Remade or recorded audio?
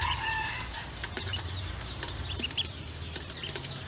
remade